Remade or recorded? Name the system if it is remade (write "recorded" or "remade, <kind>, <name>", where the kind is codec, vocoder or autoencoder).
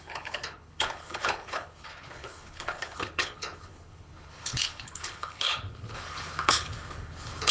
remade, codec, HILCodec